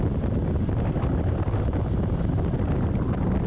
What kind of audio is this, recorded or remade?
recorded